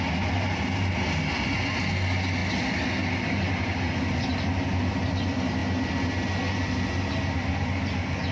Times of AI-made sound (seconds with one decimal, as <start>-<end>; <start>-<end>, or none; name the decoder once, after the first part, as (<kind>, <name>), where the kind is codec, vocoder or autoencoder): none